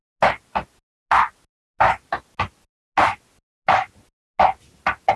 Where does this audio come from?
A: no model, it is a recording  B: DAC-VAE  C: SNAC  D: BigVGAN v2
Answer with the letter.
A